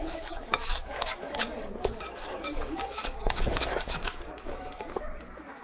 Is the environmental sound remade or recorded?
remade